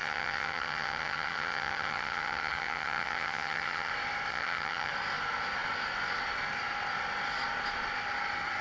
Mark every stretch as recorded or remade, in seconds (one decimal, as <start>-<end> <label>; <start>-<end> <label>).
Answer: 0.0-3.9 remade; 3.9-4.3 recorded; 4.3-4.9 remade; 4.9-8.6 recorded